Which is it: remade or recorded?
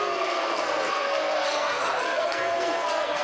remade